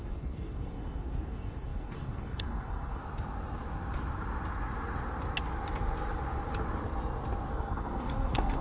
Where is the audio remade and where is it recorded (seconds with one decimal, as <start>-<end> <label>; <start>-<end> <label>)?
0.0-3.0 remade; 3.0-7.5 recorded; 7.5-8.6 remade